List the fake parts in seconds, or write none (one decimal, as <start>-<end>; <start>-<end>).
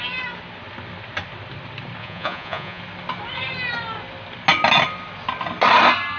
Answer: 2.0-2.8